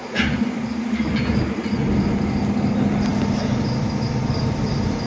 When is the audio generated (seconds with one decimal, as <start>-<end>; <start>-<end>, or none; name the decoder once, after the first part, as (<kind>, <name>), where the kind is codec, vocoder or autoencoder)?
none